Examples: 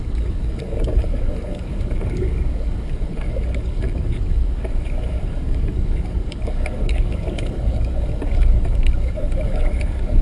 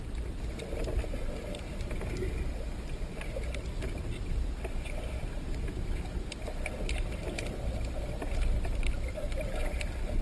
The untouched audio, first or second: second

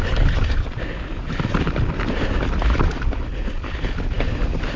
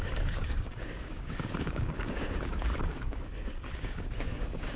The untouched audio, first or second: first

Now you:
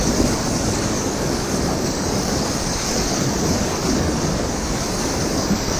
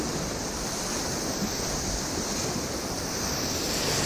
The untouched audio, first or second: second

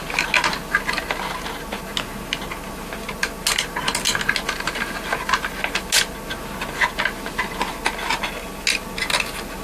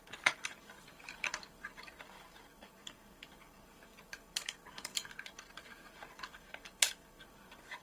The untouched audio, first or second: first